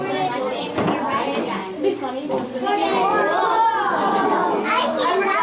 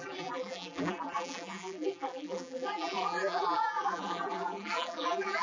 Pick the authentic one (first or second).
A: first